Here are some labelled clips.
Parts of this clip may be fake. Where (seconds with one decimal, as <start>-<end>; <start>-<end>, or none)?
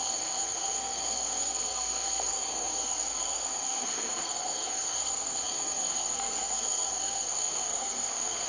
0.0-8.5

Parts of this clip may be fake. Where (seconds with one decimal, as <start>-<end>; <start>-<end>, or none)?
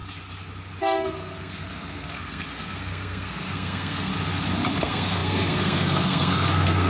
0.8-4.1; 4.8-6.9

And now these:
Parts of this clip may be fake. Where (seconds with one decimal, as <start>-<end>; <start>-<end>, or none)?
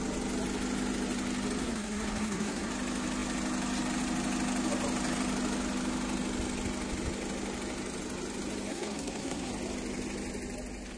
1.6-2.7; 8.7-9.5